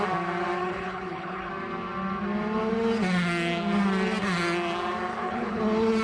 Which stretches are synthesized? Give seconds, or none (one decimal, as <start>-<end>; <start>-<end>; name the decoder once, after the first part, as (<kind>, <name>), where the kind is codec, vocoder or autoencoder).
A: 0.6-1.5 (codec, HILCodec); 5.1-5.6